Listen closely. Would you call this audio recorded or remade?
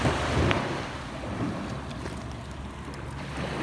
recorded